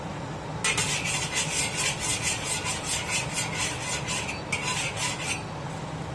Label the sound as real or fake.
real